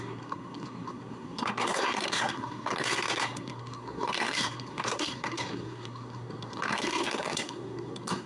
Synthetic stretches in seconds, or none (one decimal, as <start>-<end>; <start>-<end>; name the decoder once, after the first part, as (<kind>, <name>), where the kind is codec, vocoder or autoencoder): 0.0-8.3 (codec, SNAC)